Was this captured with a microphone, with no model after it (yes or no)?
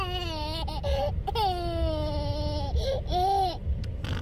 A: yes